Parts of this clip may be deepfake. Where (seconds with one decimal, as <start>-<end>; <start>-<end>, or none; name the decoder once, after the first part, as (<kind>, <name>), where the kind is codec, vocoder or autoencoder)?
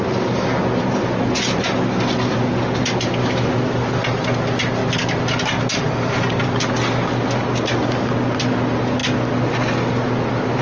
3.2-3.9 (autoencoder, DAC-VAE)